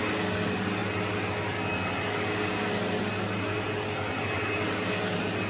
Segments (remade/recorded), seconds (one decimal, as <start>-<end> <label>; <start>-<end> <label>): 0.0-5.5 recorded